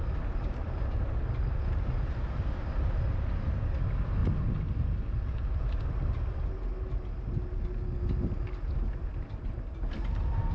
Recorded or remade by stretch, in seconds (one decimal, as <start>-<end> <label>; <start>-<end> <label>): 0.0-10.5 recorded